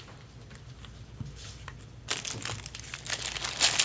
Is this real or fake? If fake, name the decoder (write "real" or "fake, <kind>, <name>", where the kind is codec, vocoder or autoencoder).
real